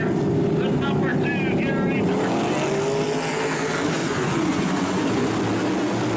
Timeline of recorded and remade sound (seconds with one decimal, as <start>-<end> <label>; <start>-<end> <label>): 0.0-4.0 recorded; 4.0-5.3 remade; 5.3-6.2 recorded